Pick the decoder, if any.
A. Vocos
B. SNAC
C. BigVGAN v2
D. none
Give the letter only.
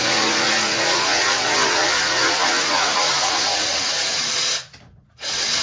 A